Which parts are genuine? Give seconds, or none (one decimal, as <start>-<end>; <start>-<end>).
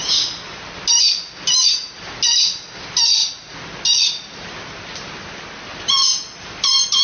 0.0-7.0